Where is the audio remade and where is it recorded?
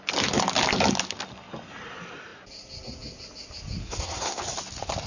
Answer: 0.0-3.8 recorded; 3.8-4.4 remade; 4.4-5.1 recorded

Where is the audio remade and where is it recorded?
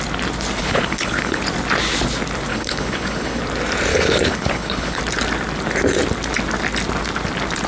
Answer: 0.0-0.6 recorded; 0.6-1.4 remade; 1.4-2.5 recorded; 2.5-3.4 remade; 3.4-3.9 recorded; 3.9-5.0 remade; 5.0-7.7 recorded